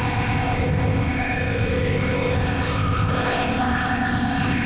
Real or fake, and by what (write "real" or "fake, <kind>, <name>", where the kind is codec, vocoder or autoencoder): fake, codec, ZipCodec